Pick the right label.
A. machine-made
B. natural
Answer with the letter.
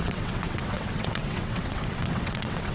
A